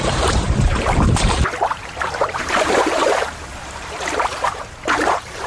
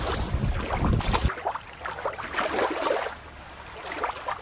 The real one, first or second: second